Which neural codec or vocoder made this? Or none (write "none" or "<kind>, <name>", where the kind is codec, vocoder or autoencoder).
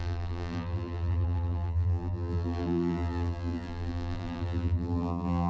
vocoder, BigVGAN v2